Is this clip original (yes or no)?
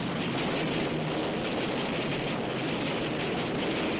yes